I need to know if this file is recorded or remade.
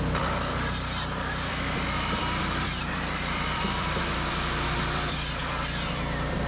remade